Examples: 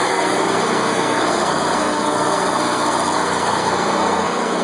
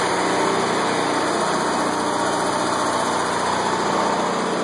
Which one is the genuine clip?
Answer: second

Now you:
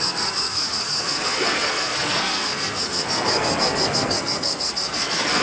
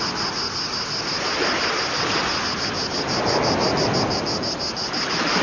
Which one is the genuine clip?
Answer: second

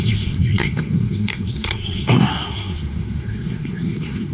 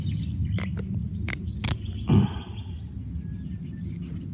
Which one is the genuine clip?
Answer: second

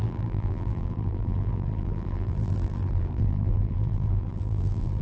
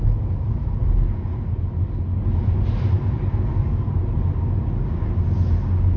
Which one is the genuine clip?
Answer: second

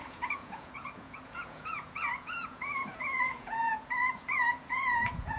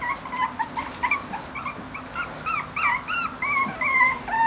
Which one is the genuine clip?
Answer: second